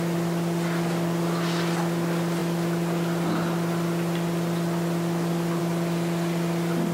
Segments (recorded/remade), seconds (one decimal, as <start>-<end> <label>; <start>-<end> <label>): 0.0-6.9 recorded